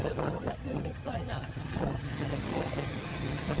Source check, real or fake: fake